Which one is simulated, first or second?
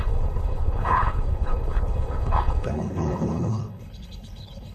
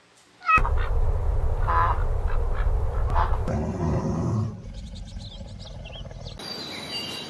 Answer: first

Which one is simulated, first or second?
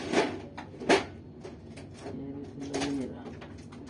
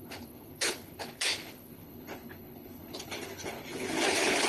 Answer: second